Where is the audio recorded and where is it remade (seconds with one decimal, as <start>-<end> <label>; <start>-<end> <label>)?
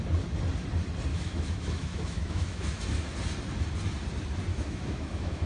0.0-1.1 recorded; 1.1-2.8 remade; 2.8-4.5 recorded; 4.5-5.5 remade